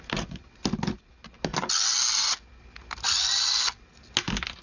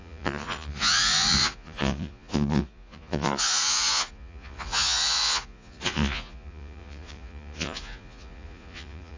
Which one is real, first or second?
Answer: first